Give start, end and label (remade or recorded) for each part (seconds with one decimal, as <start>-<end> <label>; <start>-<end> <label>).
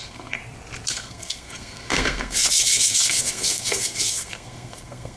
0.0-0.4 remade; 0.4-0.9 recorded; 0.9-5.2 remade